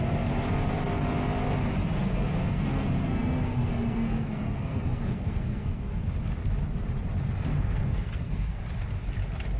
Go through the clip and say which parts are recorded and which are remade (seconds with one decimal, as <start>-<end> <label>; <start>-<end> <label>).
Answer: 0.0-2.0 recorded; 2.0-6.1 remade; 6.1-7.5 recorded; 7.5-8.6 remade; 8.6-9.6 recorded